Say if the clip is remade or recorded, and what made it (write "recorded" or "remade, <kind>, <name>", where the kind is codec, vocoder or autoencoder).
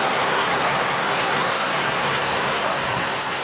remade, codec, SNAC